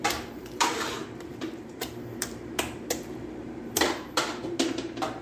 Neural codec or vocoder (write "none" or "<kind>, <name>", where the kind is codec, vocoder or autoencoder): vocoder, BigVGAN v2